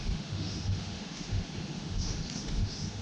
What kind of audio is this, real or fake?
fake